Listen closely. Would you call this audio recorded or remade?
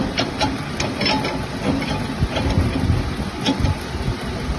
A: recorded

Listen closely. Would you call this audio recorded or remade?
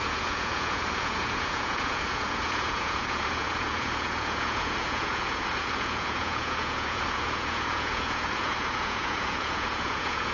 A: remade